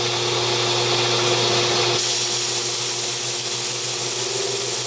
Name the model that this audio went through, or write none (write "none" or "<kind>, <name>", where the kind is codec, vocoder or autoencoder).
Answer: none